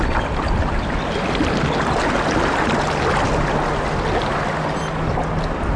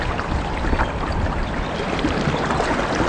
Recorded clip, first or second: first